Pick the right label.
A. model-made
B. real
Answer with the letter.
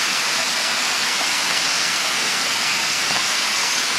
A